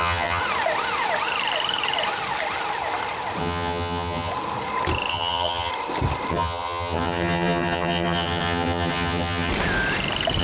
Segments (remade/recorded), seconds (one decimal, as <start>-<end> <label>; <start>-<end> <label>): 0.0-0.4 remade; 0.4-3.4 recorded; 3.4-4.3 remade; 4.3-5.1 recorded; 5.1-5.7 remade; 5.7-6.3 recorded; 6.3-9.5 remade; 9.5-10.4 recorded